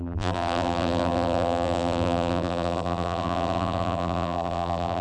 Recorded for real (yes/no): no